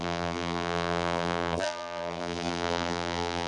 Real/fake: fake